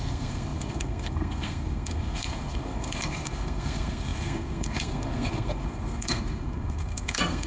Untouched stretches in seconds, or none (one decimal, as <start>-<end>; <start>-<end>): none